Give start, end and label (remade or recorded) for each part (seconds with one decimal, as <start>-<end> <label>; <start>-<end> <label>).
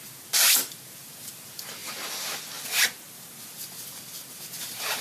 0.0-5.0 recorded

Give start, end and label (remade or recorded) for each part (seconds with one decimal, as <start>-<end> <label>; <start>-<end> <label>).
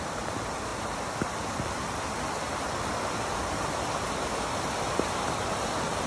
0.0-6.1 remade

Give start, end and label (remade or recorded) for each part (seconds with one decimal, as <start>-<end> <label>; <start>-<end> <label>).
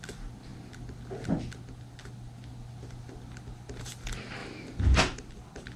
0.0-5.8 recorded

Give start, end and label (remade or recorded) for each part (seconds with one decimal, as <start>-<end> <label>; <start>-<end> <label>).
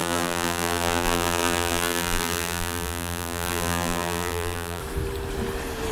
0.0-4.8 remade; 4.8-5.9 recorded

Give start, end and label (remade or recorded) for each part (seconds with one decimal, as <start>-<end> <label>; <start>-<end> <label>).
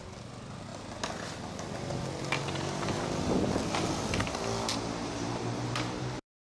0.0-4.7 recorded; 4.7-6.6 remade